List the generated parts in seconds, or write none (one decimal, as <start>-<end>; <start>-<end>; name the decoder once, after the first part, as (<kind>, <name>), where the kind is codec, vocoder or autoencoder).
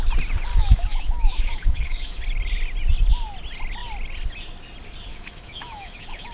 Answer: 0.5-2.2 (autoencoder, DAC-VAE); 5.1-6.3